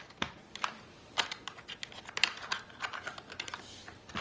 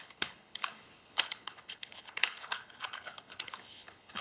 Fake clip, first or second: second